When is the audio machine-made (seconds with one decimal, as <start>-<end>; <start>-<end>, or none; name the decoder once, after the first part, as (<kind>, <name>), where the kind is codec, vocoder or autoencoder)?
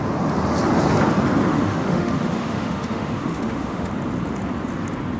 1.5-3.9 (autoencoder, DAC-VAE)